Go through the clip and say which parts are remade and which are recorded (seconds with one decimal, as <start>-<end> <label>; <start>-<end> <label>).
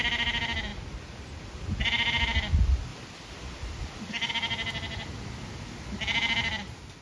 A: 0.0-0.7 recorded; 0.7-1.5 remade; 1.5-2.9 recorded; 2.9-4.3 remade; 4.3-7.0 recorded